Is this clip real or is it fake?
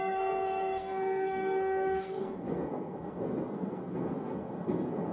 fake